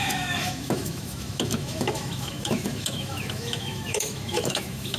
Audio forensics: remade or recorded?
remade